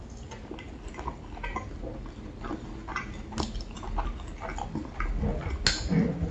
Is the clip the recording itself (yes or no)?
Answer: yes